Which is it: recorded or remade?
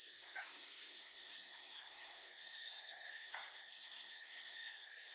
remade